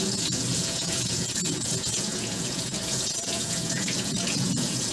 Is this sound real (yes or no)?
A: no